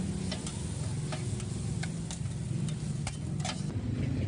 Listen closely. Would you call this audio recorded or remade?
recorded